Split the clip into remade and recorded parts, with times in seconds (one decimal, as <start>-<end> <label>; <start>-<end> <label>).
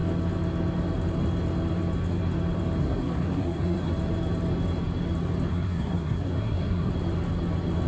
0.0-2.8 recorded; 2.8-3.9 remade; 3.9-5.5 recorded; 5.5-6.9 remade; 6.9-7.9 recorded